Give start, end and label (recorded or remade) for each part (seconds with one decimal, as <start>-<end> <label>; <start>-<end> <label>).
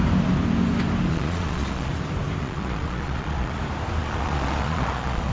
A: 0.0-1.1 recorded; 1.1-1.9 remade; 1.9-2.4 recorded; 2.4-3.6 remade; 3.6-4.0 recorded; 4.0-5.3 remade